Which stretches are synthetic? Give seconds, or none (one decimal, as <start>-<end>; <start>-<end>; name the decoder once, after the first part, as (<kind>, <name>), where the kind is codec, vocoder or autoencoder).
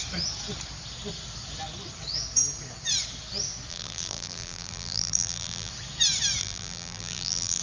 3.7-5.7 (vocoder, BigVGAN v2); 6.4-7.6